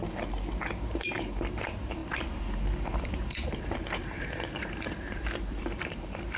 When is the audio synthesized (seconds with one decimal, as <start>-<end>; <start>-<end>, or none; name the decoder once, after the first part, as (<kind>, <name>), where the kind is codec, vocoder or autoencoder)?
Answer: 0.5-6.4 (vocoder, BigVGAN v2)